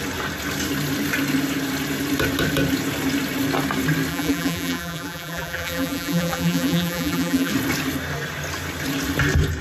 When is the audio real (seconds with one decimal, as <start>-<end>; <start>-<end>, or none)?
0.0-4.1; 7.5-9.6